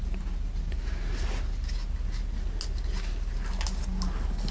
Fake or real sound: real